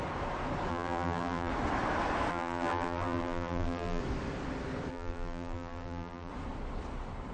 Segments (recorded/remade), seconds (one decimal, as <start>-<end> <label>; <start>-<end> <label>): 0.0-0.7 recorded; 0.7-1.5 remade; 1.5-2.3 recorded; 2.3-4.0 remade; 4.0-4.9 recorded; 4.9-6.3 remade; 6.3-7.3 recorded